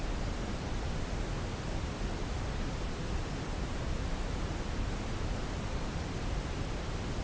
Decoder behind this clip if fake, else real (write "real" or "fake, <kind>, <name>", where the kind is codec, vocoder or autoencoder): real